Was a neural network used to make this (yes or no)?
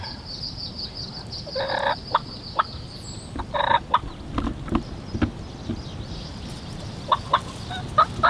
no